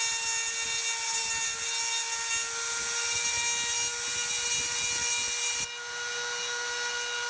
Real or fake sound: real